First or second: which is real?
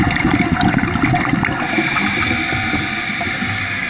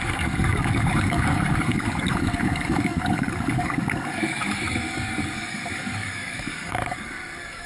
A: first